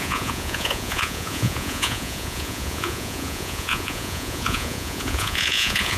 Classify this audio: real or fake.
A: fake